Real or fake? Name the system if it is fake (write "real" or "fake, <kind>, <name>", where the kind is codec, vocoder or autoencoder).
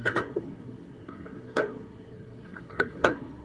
fake, codec, SNAC